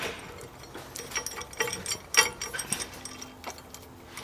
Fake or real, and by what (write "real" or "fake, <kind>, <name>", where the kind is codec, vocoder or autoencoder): real